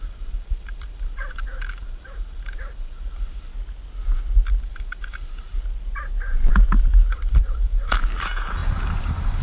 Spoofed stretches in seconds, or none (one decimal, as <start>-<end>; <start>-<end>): 0.0-3.5; 4.6-5.5; 7.1-9.4